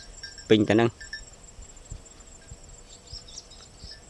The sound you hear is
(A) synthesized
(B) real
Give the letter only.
B